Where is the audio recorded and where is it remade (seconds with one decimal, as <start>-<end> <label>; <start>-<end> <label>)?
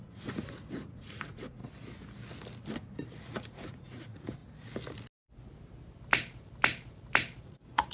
0.0-1.6 remade; 1.6-3.2 recorded; 3.2-4.4 remade; 4.4-7.4 recorded; 7.4-7.9 remade